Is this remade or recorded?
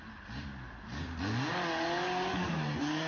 recorded